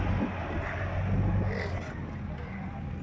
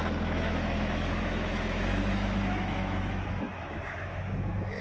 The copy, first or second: second